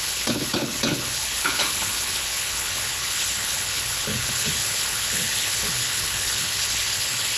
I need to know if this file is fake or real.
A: fake